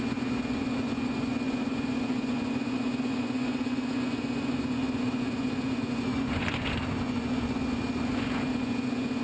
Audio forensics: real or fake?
fake